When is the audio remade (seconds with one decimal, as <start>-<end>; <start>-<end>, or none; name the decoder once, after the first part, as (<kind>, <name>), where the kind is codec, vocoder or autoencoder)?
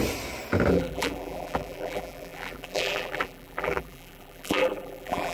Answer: 0.7-5.3 (vocoder, BigVGAN v2)